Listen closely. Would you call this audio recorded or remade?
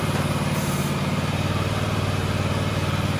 remade